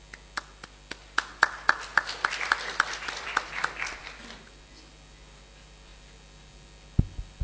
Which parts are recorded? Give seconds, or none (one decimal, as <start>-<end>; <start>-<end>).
0.0-1.9; 4.2-7.4